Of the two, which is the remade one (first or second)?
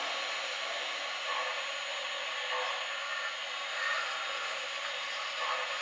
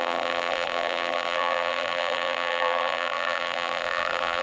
second